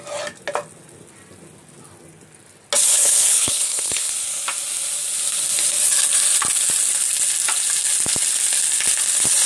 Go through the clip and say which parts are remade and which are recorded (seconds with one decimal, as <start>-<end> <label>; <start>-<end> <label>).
0.0-2.9 recorded; 2.9-4.1 remade; 4.1-9.5 recorded